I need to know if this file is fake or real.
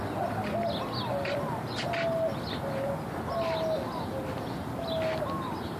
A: real